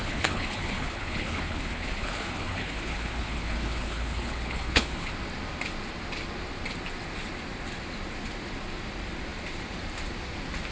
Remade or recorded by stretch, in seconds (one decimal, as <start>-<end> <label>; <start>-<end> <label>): 0.0-5.1 remade; 5.1-10.7 recorded